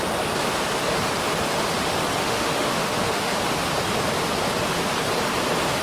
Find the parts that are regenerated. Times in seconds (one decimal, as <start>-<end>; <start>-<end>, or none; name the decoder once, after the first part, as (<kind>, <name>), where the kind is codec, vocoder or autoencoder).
2.2-3.4 (autoencoder, DAC-VAE)